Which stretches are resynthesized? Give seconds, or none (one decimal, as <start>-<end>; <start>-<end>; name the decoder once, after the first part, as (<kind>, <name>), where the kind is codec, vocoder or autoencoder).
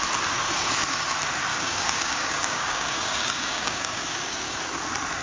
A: 1.5-4.6 (codec, DAC)